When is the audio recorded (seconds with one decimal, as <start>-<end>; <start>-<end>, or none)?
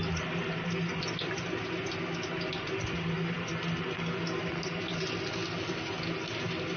0.0-6.8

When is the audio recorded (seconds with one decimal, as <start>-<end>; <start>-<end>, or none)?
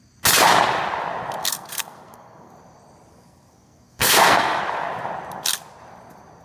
0.0-1.4; 2.5-3.1; 4.6-6.4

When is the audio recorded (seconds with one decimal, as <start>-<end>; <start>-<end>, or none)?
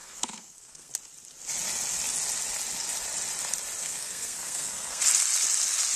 0.9-3.8; 5.0-6.0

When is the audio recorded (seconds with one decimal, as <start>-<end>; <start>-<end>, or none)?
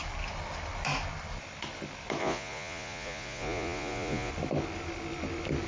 0.0-2.2; 4.3-5.7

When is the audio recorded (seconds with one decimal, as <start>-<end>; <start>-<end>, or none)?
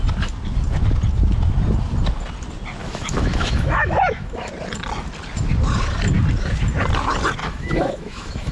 0.0-2.8; 4.5-7.4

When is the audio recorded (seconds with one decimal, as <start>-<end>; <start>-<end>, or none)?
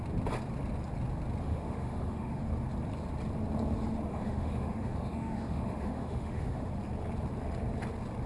0.0-1.4; 2.4-4.1; 6.7-8.3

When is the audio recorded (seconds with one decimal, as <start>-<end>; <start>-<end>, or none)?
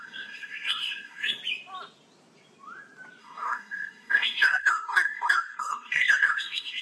1.4-3.2